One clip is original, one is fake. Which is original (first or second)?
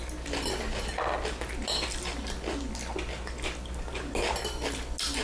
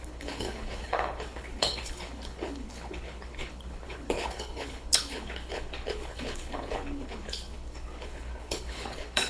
first